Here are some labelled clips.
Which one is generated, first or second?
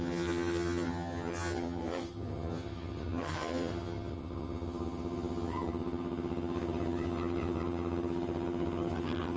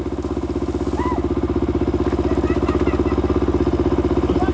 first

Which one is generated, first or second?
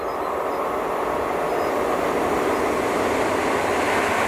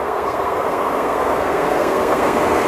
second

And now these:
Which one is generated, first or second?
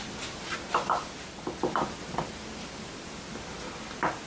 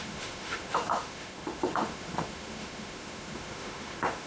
second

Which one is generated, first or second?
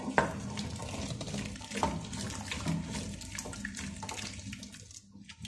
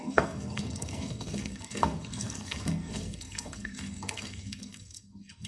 second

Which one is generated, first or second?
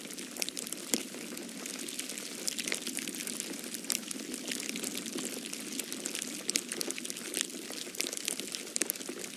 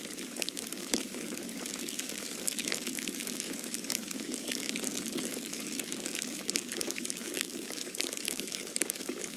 second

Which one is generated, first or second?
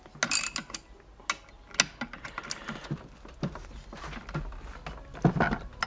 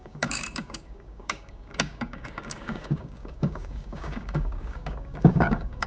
second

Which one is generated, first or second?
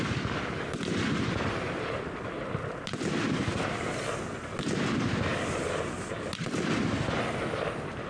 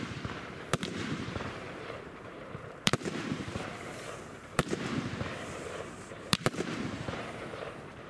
second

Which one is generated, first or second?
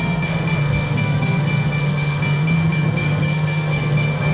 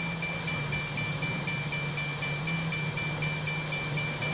first